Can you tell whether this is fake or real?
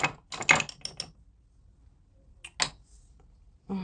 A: real